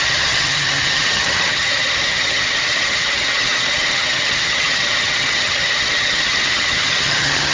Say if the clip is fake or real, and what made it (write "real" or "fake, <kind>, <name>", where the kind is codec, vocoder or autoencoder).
fake, vocoder, HiFi-GAN